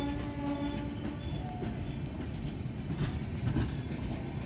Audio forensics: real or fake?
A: real